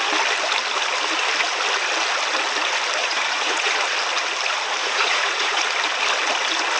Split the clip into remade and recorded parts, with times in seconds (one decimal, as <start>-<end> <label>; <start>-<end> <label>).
0.0-3.0 recorded; 3.0-3.7 remade; 3.7-4.8 recorded; 4.8-5.6 remade; 5.6-6.8 recorded